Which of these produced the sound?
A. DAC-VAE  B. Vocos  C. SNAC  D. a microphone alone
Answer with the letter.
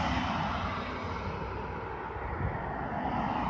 D